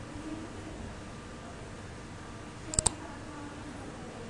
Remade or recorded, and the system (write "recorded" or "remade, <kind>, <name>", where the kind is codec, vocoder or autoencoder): recorded